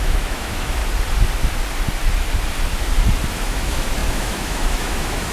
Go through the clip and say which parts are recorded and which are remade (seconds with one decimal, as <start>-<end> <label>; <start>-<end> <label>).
0.0-0.8 remade; 0.8-3.3 recorded; 3.3-5.3 remade